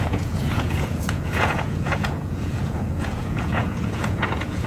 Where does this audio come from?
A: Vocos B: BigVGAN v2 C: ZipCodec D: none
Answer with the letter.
A